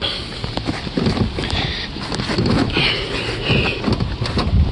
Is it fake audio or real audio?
real